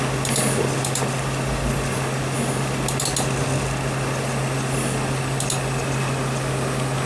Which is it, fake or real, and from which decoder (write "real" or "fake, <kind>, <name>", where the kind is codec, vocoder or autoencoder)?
real